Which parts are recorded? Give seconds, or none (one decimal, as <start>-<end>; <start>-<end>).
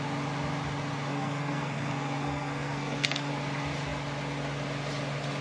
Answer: 0.0-1.1; 3.3-5.4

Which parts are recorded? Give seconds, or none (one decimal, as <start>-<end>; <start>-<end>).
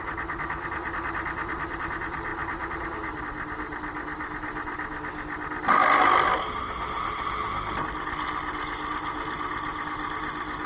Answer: 0.0-10.7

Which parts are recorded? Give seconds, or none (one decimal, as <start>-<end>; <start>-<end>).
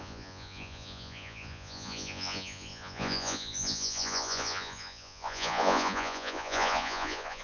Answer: none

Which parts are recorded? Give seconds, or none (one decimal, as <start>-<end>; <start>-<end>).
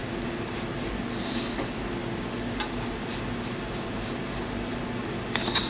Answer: 0.0-5.7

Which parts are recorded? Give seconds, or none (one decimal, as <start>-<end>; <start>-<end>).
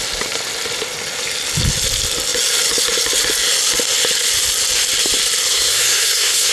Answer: 0.0-5.5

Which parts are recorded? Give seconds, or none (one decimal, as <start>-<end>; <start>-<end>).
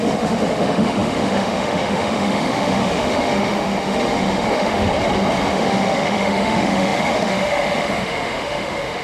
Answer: 4.9-5.5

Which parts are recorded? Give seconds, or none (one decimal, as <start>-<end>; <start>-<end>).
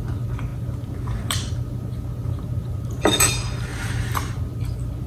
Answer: 0.0-3.7; 4.4-5.1